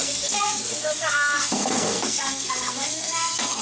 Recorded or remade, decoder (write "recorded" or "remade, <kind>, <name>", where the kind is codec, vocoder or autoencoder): remade, codec, SNAC